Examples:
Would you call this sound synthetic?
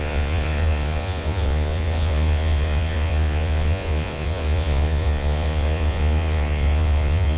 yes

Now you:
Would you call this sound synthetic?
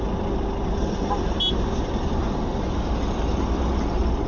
no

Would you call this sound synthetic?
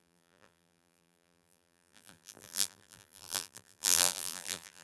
yes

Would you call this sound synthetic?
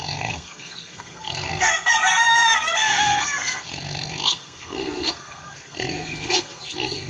yes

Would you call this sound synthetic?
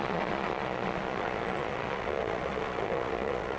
yes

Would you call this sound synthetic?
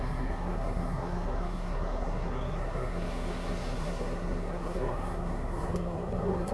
yes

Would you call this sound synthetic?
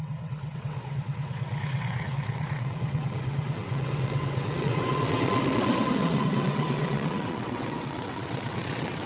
yes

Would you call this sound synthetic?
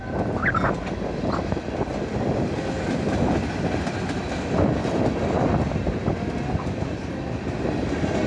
no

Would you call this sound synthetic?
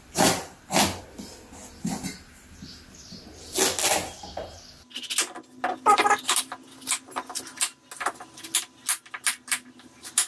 no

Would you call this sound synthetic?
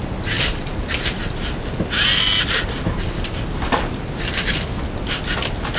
no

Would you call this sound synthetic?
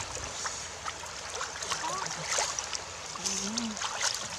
no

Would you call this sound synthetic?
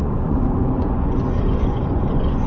yes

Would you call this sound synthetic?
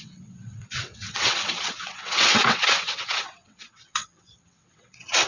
yes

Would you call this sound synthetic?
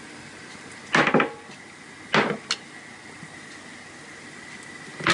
no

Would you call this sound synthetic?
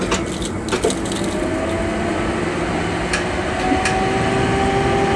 no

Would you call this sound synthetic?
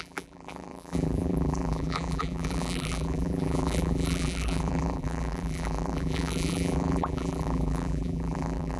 yes